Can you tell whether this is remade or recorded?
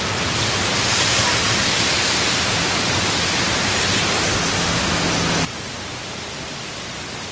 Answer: recorded